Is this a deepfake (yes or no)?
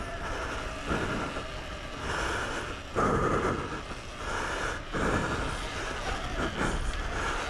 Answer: no